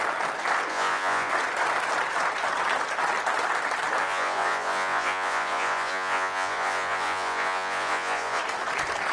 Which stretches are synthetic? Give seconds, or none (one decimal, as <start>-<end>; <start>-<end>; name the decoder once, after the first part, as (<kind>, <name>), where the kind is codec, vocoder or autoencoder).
0.7-1.3 (vocoder, Vocos); 4.0-8.4